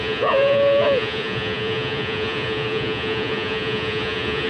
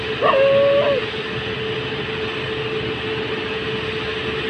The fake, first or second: first